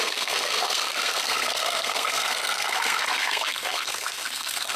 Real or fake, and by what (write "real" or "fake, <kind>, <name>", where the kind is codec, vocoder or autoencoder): fake, codec, SNAC